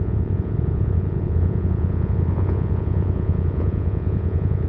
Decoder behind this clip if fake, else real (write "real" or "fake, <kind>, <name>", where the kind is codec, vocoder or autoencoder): fake, vocoder, Vocos